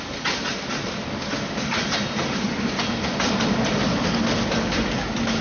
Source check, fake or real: real